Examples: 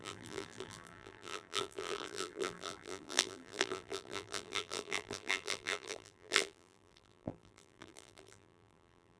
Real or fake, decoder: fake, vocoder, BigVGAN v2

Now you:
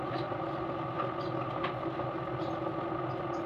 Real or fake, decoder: real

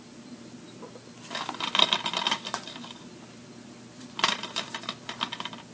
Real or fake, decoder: real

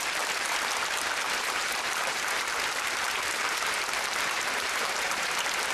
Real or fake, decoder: fake, vocoder, BigVGAN v2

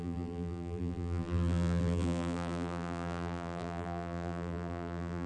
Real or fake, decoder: fake, vocoder, BigVGAN v2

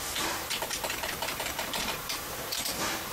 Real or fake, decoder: fake, vocoder, BigVGAN v2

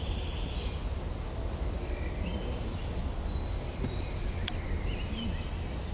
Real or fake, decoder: real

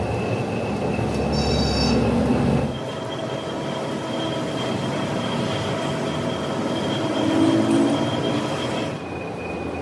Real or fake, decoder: real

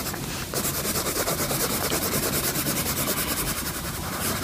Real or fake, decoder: real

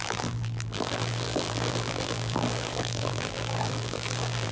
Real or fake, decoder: fake, vocoder, BigVGAN v2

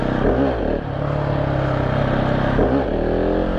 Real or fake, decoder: real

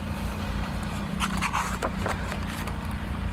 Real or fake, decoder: fake, vocoder, BigVGAN v2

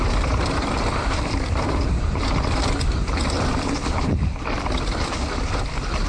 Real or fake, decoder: fake, vocoder, BigVGAN v2